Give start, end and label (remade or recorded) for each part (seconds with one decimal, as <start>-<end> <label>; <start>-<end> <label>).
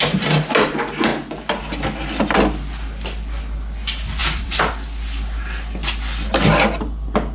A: 0.0-4.2 recorded; 4.2-4.7 remade; 4.7-7.3 recorded